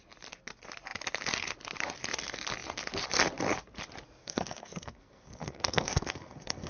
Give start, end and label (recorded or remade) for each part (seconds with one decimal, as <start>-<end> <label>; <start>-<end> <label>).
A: 0.0-4.2 recorded; 4.2-6.7 remade